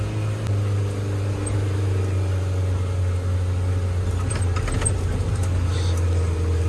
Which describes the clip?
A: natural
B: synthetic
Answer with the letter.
A